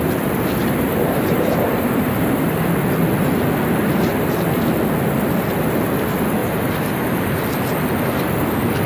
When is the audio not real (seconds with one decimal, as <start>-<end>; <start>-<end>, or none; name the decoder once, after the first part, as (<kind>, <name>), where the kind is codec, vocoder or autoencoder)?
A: 0.6-2.6 (vocoder, BigVGAN v2); 6.4-7.4